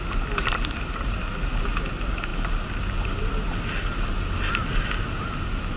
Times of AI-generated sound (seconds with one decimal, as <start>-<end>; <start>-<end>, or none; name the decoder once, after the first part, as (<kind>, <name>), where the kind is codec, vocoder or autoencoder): none